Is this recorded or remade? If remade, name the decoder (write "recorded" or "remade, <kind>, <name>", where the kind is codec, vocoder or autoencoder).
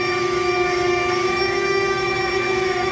remade, autoencoder, DAC-VAE